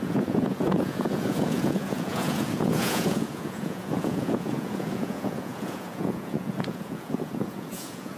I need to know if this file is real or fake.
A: fake